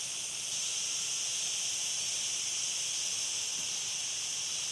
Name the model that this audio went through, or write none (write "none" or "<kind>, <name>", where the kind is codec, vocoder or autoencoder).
none